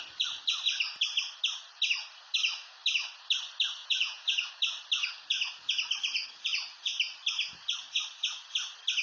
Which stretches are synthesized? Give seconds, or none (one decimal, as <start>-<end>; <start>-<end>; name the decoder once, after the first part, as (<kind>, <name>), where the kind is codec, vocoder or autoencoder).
3.8-4.5 (vocoder, Vocos)